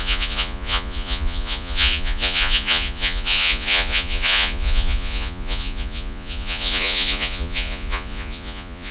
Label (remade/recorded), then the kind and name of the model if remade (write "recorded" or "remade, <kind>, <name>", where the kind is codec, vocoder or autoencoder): remade, vocoder, Vocos